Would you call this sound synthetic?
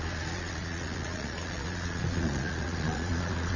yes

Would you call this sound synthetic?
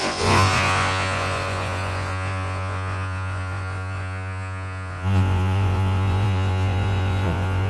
yes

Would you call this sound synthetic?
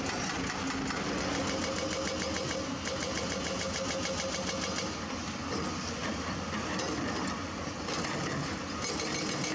no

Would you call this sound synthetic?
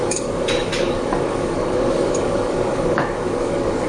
yes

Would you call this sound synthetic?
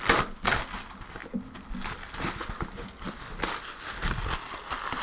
no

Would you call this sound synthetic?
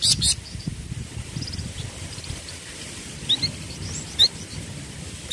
no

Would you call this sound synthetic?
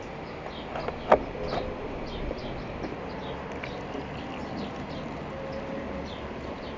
no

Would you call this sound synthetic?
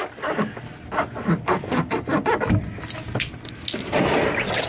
no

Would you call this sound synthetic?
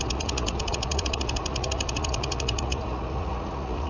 yes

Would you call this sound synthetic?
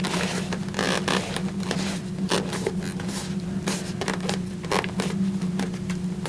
no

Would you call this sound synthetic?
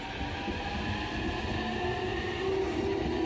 no